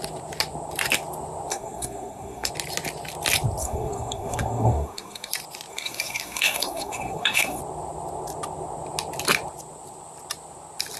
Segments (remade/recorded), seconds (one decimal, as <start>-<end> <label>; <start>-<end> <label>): 0.0-1.5 recorded; 1.5-2.5 remade; 2.5-3.6 recorded; 3.6-5.3 remade; 5.3-5.7 recorded; 5.7-7.6 remade; 7.6-11.0 recorded